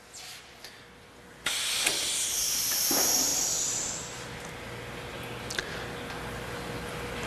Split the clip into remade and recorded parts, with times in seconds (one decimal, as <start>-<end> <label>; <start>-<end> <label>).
0.0-7.3 recorded